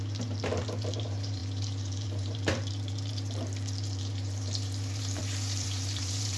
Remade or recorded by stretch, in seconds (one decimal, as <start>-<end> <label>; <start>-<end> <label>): 0.0-6.4 remade